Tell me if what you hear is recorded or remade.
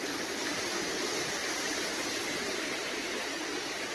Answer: recorded